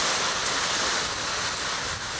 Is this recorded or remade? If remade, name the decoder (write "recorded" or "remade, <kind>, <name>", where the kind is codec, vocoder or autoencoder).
recorded